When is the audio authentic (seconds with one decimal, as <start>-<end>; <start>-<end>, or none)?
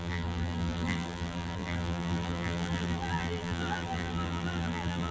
none